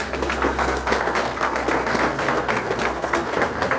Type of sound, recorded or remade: remade